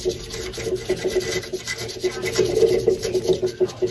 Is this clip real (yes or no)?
yes